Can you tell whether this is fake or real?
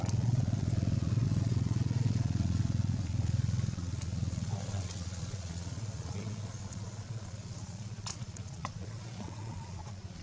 fake